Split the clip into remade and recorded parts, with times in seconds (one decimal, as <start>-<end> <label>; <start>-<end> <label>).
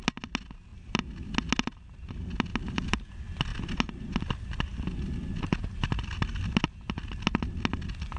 0.0-2.5 recorded; 2.5-3.1 remade; 3.1-8.2 recorded